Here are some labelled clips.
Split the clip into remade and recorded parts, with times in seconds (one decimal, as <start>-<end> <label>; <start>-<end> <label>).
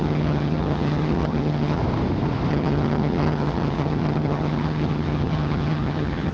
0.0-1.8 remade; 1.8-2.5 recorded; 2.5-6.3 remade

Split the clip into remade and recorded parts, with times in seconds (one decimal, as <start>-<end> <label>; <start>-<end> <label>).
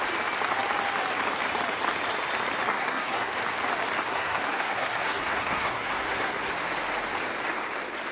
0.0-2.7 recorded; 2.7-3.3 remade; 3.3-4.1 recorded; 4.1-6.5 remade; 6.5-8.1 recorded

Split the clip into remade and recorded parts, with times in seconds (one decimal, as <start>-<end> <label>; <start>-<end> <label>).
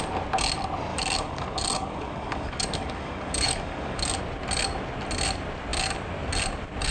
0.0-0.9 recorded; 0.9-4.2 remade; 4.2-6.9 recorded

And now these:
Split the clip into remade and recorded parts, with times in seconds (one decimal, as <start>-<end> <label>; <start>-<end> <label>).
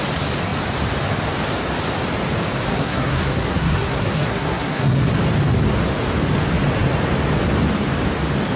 0.0-2.7 recorded; 2.7-5.1 remade; 5.1-8.6 recorded